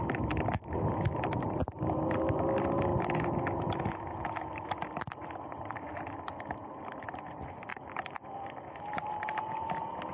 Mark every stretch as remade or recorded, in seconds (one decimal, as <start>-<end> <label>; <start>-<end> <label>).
0.0-10.1 recorded